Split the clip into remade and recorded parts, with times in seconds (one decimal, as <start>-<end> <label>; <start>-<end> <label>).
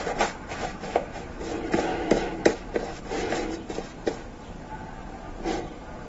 0.0-0.7 recorded; 0.7-1.2 remade; 1.2-1.9 recorded; 1.9-3.0 remade; 3.0-6.1 recorded